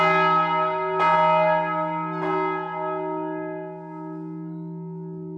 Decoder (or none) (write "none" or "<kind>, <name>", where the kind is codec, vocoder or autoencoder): none